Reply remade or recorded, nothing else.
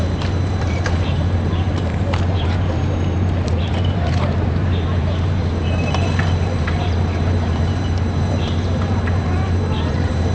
remade